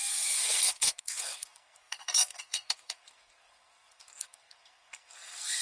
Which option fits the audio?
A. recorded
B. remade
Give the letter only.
B